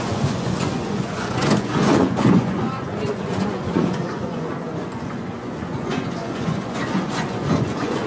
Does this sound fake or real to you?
fake